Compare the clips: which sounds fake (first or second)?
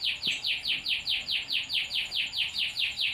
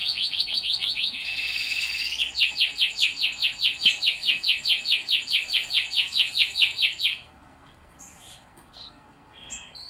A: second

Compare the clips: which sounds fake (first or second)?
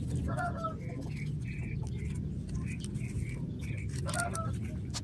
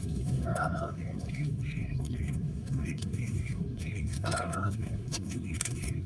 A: second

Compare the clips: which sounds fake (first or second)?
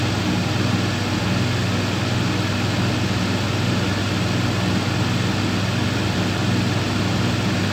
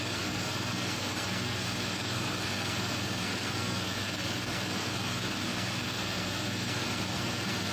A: second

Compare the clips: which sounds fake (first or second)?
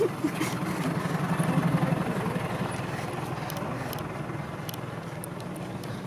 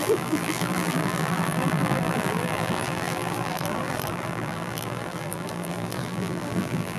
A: second